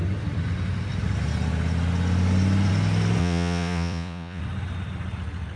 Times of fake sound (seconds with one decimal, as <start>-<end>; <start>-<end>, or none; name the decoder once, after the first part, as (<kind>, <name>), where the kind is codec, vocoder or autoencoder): 3.2-4.4 (vocoder, Vocos)

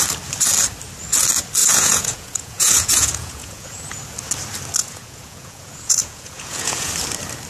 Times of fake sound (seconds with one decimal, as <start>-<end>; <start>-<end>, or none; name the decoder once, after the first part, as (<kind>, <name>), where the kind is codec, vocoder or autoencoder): 1.6-4.0 (vocoder, Vocos); 4.8-6.9

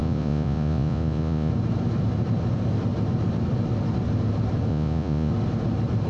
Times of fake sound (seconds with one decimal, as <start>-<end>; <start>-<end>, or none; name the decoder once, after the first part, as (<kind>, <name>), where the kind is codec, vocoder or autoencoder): 0.0-1.5 (vocoder, Vocos); 4.7-5.3

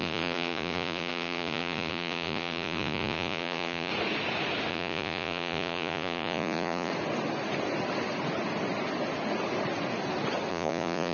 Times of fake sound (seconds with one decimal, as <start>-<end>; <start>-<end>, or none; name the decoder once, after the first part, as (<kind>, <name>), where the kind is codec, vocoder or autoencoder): 0.0-3.9 (vocoder, Vocos); 4.7-6.9; 10.5-11.1

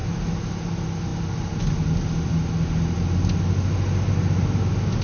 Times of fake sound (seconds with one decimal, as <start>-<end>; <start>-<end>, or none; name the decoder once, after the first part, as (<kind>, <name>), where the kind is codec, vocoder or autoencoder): none

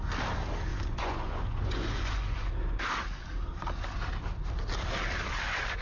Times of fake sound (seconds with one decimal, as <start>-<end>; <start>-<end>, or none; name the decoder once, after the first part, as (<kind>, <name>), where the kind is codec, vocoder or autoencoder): 0.7-2.5 (vocoder, Vocos)

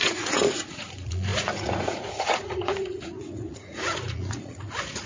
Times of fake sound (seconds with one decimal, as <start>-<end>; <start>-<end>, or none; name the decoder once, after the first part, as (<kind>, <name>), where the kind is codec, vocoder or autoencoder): 0.0-5.1 (vocoder, Vocos)